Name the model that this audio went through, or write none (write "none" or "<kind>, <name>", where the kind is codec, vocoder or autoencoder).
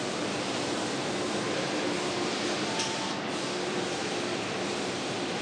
vocoder, BigVGAN v2